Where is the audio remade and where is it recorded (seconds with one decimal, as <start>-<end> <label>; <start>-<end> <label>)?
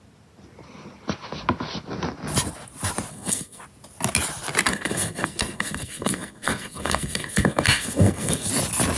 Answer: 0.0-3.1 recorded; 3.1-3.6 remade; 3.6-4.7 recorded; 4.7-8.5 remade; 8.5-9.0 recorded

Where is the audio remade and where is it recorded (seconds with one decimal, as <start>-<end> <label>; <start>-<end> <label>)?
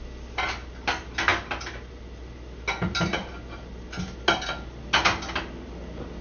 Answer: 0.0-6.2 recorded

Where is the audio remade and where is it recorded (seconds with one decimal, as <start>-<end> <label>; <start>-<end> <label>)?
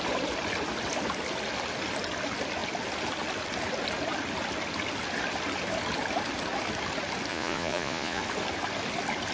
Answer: 0.0-7.3 recorded; 7.3-8.2 remade; 8.2-9.3 recorded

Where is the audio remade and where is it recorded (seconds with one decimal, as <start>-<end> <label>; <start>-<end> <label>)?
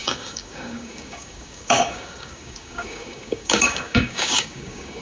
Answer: 0.0-5.0 remade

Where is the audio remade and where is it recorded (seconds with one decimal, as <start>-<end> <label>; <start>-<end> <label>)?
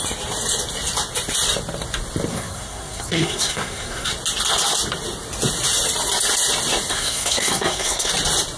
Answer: 0.0-2.3 recorded; 2.3-4.1 remade; 4.1-6.9 recorded; 6.9-8.1 remade; 8.1-8.6 recorded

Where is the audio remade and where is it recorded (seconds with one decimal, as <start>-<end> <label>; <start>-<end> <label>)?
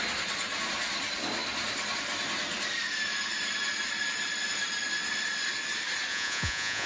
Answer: 0.0-6.1 recorded; 6.1-6.9 remade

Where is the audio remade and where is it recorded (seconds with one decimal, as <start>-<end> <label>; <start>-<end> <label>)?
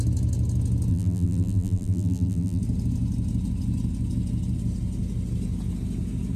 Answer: 0.0-0.9 recorded; 0.9-2.6 remade; 2.6-6.4 recorded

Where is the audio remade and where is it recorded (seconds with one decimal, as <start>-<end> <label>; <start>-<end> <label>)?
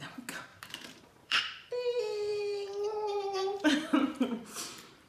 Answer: 0.0-0.5 recorded; 0.5-1.4 remade; 1.4-2.3 recorded; 2.3-5.1 remade